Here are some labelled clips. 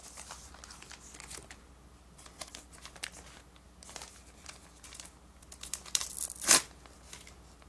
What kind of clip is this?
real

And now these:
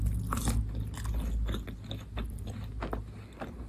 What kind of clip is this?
real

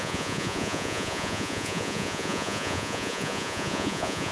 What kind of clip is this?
fake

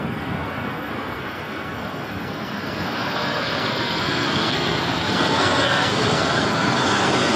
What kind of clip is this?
fake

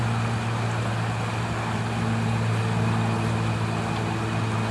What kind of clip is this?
real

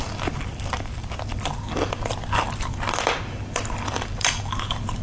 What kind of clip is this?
fake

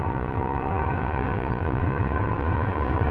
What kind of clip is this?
fake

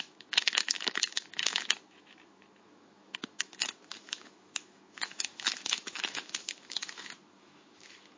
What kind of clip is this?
fake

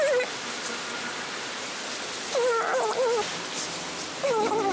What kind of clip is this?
real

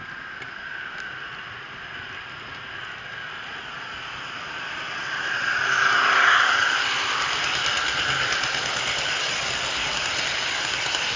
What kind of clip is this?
real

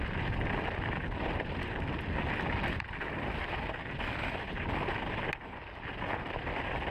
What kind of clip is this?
real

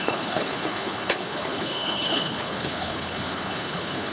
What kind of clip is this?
fake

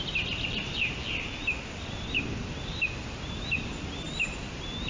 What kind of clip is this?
real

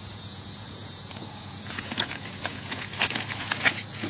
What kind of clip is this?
fake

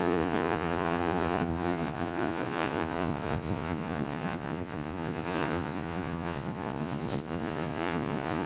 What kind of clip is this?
fake